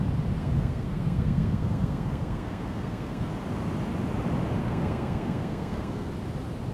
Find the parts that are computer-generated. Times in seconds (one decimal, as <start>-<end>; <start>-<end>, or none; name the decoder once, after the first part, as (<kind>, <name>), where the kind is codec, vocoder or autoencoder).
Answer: 0.4-3.3 (codec, SNAC); 4.6-6.1